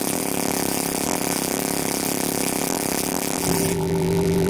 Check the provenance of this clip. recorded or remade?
remade